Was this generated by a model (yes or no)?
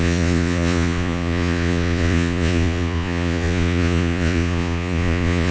yes